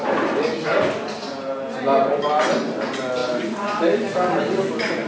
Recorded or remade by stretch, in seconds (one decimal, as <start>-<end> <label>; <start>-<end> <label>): 0.0-5.1 recorded

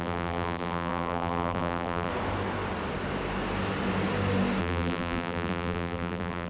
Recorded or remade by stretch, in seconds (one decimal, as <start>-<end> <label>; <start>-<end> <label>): 0.0-2.1 remade; 2.1-4.6 recorded; 4.6-6.5 remade

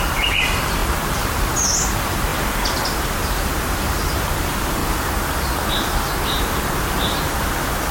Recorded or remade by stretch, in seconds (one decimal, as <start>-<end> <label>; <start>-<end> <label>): 0.0-4.8 remade; 4.8-6.4 recorded; 6.4-7.9 remade

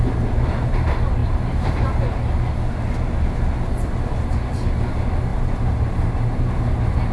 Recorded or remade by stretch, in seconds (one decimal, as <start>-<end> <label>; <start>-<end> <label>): 0.0-1.2 recorded; 1.2-1.7 remade; 1.7-5.3 recorded; 5.3-6.6 remade; 6.6-7.1 recorded

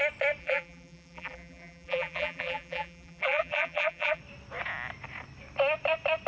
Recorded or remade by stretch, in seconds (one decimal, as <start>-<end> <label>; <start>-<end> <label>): 0.0-0.4 recorded; 0.4-4.2 remade; 4.2-6.3 recorded

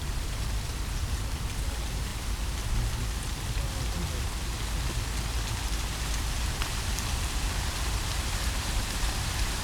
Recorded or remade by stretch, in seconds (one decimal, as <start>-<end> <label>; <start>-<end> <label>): 0.0-2.1 remade; 2.1-6.3 recorded; 6.3-9.6 remade

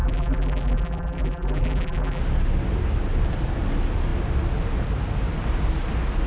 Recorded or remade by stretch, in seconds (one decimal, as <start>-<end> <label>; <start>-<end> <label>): 0.0-2.2 remade; 2.2-6.3 recorded